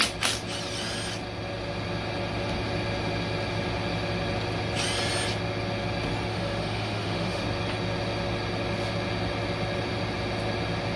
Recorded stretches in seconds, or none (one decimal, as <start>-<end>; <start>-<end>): 0.0-6.3; 7.4-11.0

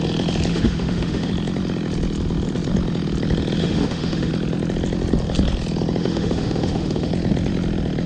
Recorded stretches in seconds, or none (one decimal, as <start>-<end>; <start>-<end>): 0.0-0.5; 1.3-3.6; 4.3-6.0; 7.1-8.1

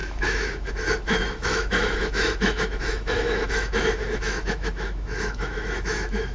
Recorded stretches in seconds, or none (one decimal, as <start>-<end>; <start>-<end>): none

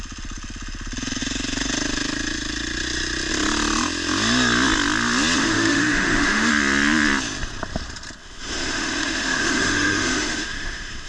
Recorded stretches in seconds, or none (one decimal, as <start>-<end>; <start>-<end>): 0.0-5.4; 6.5-8.2